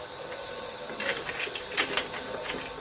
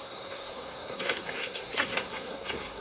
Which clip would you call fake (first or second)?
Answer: second